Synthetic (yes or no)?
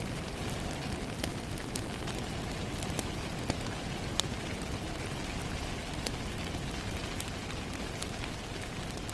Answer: no